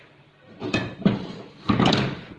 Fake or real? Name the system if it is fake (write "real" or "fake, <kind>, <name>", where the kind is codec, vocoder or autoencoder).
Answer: fake, vocoder, BigVGAN v2